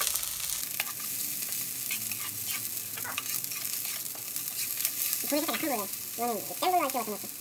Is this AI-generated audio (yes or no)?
no